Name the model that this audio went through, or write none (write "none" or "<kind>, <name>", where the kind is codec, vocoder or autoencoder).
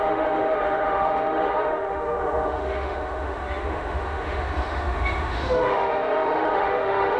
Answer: autoencoder, DAC-VAE